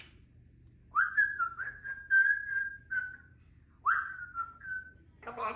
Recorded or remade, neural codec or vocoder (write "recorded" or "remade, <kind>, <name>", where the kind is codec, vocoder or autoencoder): recorded